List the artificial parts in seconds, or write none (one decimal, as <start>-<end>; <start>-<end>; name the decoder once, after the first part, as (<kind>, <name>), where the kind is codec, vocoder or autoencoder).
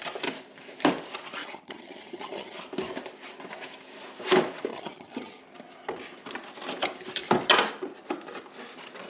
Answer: 1.4-2.6 (vocoder, HiFi-GAN); 4.7-5.4